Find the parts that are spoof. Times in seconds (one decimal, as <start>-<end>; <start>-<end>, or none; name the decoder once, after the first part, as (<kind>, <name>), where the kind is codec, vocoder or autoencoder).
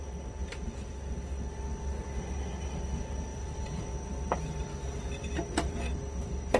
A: 3.3-3.8 (vocoder, BigVGAN v2)